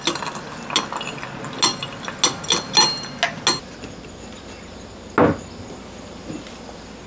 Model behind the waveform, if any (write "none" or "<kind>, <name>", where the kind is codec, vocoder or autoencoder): none